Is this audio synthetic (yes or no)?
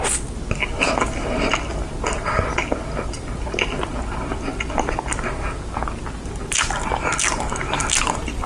no